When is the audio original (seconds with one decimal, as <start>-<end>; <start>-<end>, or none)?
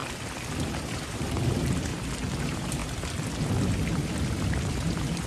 0.0-0.9; 1.9-2.4; 2.8-4.7